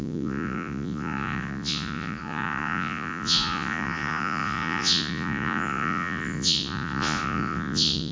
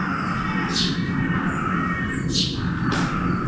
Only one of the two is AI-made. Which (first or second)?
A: first